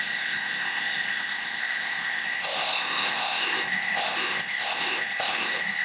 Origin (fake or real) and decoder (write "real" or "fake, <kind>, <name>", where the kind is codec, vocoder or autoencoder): fake, codec, ZipCodec